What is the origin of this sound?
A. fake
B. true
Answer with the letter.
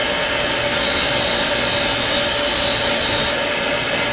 B